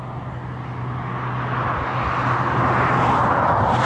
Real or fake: real